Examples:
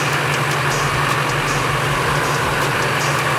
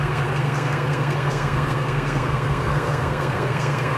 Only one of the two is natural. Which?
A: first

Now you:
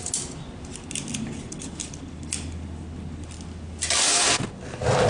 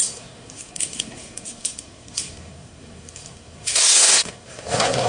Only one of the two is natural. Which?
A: first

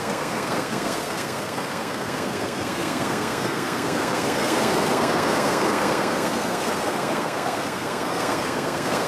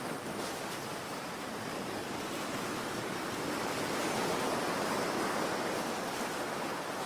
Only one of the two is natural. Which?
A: second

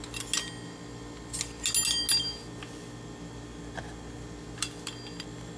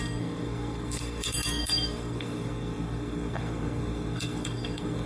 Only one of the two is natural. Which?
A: first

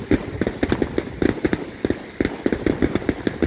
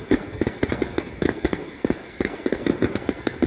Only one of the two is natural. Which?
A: first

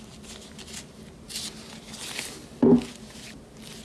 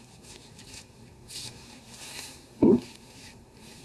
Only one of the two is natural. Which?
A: first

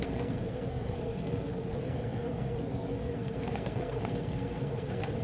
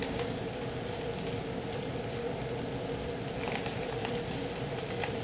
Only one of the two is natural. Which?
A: second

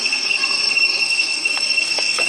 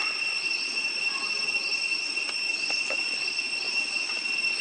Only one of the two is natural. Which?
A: second